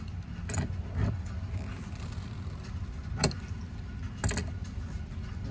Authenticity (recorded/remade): recorded